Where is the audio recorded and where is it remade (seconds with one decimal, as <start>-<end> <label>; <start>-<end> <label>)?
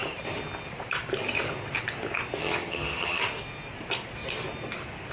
0.0-2.4 recorded; 2.4-3.2 remade; 3.2-5.1 recorded